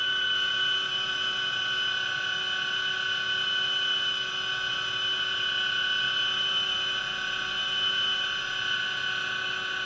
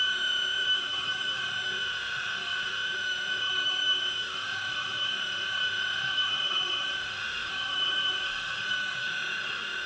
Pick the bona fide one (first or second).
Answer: first